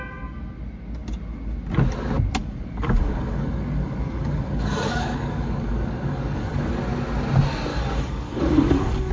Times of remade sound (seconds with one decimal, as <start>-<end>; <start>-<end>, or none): 2.4-6.7; 7.7-9.1